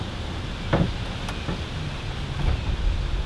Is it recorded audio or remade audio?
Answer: recorded